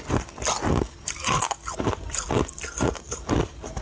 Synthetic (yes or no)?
no